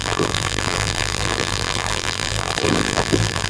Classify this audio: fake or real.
fake